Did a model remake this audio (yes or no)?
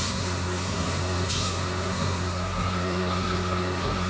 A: yes